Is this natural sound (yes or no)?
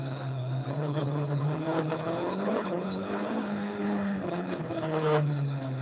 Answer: no